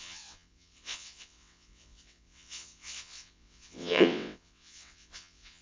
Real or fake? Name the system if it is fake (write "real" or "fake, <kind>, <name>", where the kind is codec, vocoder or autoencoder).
fake, vocoder, WaveNeXt